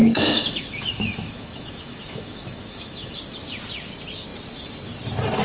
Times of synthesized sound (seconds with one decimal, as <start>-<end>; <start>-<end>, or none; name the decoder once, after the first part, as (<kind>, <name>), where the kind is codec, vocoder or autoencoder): 0.0-3.2 (autoencoder, DAC-VAE)